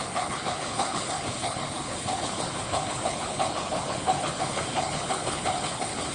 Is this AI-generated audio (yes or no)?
yes